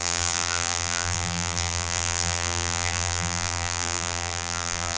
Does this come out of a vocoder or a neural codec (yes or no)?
yes